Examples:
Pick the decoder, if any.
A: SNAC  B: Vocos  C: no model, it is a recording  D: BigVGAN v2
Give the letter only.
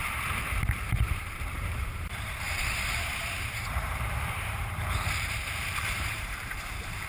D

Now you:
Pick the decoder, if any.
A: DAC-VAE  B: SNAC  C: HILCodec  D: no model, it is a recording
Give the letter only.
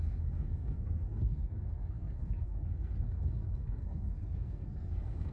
B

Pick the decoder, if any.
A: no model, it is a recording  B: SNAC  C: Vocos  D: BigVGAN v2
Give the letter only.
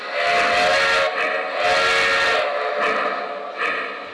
A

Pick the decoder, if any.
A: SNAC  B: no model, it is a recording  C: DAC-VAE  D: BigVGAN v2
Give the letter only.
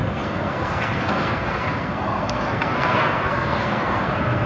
A